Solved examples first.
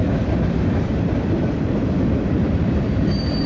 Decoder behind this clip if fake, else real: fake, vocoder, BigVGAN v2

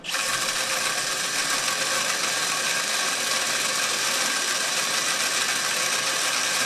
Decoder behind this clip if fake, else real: real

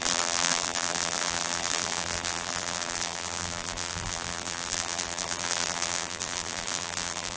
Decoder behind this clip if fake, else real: fake, vocoder, BigVGAN v2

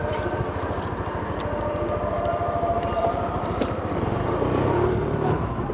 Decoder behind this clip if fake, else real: fake, vocoder, BigVGAN v2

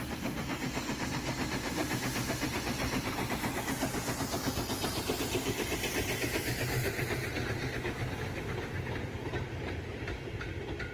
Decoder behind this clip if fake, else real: real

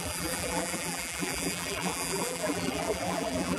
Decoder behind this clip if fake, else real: fake, vocoder, BigVGAN v2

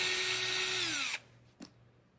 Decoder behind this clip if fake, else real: real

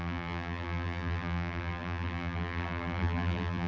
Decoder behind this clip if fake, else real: fake, vocoder, BigVGAN v2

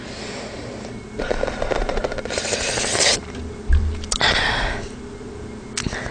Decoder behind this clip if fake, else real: real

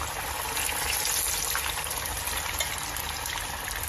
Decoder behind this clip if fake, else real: real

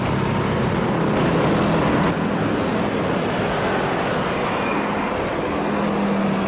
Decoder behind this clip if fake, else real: real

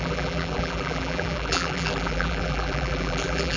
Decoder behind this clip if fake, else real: fake, vocoder, BigVGAN v2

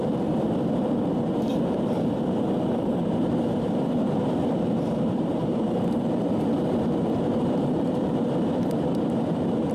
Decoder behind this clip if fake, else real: fake, vocoder, BigVGAN v2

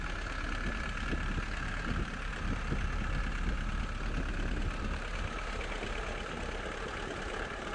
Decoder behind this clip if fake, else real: real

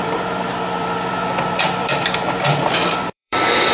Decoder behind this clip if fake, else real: fake, vocoder, BigVGAN v2